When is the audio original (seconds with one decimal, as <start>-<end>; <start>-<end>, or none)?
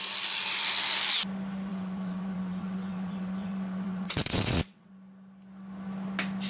0.0-1.7; 4.9-6.5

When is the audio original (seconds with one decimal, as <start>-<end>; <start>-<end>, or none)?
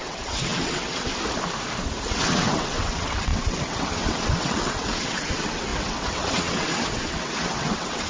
1.1-2.1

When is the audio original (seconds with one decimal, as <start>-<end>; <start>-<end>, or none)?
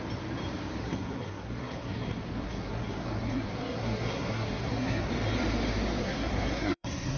0.0-0.8; 5.1-6.0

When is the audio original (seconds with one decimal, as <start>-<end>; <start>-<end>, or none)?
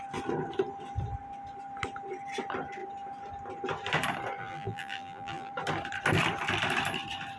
0.0-4.4; 5.5-7.4